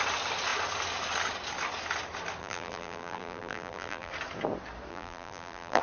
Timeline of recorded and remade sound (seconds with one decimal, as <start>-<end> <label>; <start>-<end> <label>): 0.0-2.4 recorded; 2.4-4.1 remade; 4.1-4.9 recorded; 4.9-5.8 remade